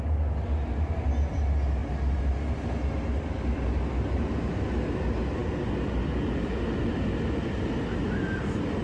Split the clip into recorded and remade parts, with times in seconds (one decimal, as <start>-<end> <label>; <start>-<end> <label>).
0.0-8.8 recorded